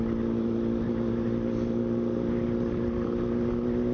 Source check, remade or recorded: recorded